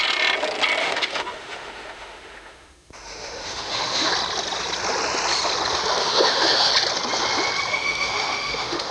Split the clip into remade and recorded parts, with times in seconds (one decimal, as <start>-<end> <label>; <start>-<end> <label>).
0.0-0.8 recorded; 0.8-4.1 remade; 4.1-6.0 recorded; 6.0-6.7 remade; 6.7-7.7 recorded; 7.7-8.9 remade